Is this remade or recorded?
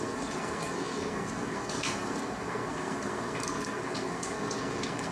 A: remade